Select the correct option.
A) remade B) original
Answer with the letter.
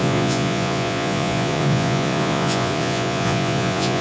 A